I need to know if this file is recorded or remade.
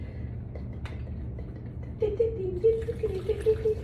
recorded